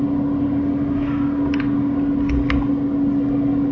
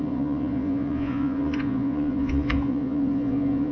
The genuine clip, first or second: first